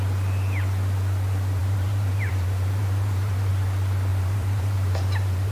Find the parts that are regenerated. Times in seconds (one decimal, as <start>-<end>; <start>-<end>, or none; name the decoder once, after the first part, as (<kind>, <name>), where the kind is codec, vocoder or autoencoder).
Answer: 1.6-3.5 (vocoder, BigVGAN v2); 4.1-5.5